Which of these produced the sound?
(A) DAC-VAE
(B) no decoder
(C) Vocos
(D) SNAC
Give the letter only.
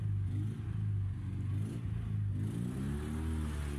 B